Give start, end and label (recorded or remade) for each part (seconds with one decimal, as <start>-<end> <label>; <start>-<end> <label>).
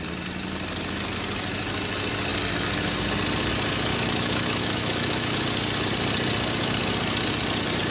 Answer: 0.0-3.9 recorded; 3.9-5.3 remade; 5.3-7.9 recorded